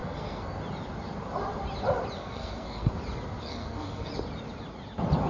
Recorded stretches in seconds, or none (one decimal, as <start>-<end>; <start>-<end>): 0.6-2.2; 2.9-3.4; 4.1-5.3